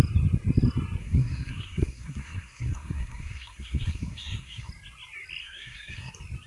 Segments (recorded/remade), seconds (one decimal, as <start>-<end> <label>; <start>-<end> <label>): 0.0-1.0 recorded; 1.0-4.7 remade; 4.7-5.4 recorded; 5.4-6.1 remade; 6.1-6.5 recorded

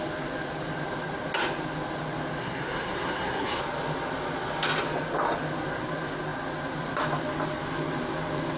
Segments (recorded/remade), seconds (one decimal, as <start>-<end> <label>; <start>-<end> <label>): 0.0-2.4 recorded; 2.4-3.6 remade; 3.6-8.6 recorded

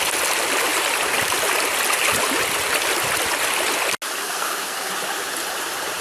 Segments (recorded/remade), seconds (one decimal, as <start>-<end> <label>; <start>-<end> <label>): 0.0-4.2 recorded; 4.2-4.9 remade; 4.9-6.0 recorded

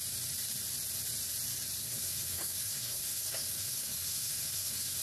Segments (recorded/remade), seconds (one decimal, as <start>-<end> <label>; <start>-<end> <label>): 0.0-1.8 recorded; 1.8-5.0 remade

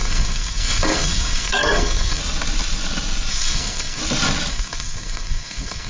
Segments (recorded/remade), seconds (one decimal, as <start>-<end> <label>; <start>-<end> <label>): 0.0-2.2 remade; 2.2-3.3 recorded; 3.3-4.0 remade; 4.0-4.5 recorded; 4.5-5.9 remade

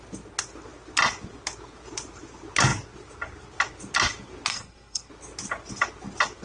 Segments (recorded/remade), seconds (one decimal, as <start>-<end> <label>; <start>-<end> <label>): 0.0-4.5 recorded; 4.5-5.1 remade; 5.1-6.4 recorded

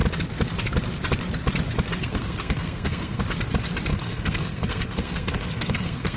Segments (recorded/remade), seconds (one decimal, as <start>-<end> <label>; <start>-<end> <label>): 0.0-2.0 recorded; 2.0-3.2 remade; 3.2-3.9 recorded; 3.9-6.2 remade

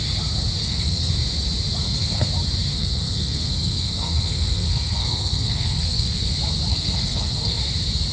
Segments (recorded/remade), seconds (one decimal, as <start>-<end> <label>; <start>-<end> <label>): 0.0-0.6 recorded; 0.6-1.1 remade; 1.1-1.8 recorded; 1.8-2.3 remade; 2.3-2.7 recorded; 2.7-6.3 remade; 6.3-6.7 recorded; 6.7-7.6 remade; 7.6-8.1 recorded